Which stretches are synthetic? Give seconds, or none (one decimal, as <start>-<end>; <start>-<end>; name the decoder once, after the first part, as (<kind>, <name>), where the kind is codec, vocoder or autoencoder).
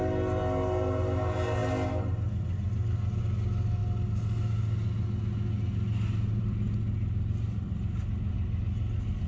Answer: none